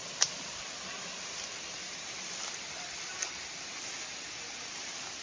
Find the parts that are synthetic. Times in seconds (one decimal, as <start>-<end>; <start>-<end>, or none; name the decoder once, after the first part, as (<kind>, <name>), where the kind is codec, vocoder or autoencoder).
0.0-3.1 (vocoder, BigVGAN v2)